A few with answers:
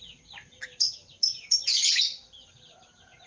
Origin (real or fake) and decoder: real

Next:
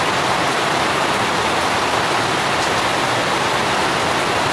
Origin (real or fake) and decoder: real